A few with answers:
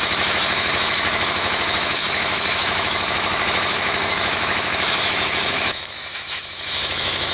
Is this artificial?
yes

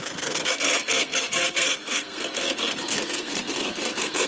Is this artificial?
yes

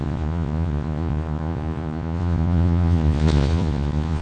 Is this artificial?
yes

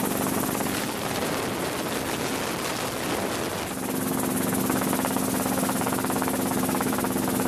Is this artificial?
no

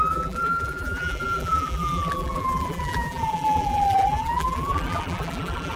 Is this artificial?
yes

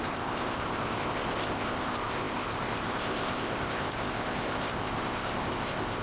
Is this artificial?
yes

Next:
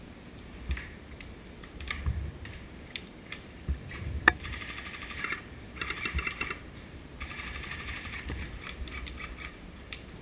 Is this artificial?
yes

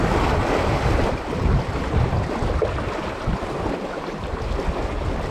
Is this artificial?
no